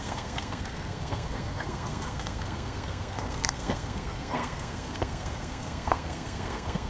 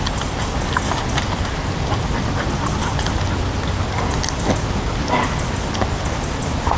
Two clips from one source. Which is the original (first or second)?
second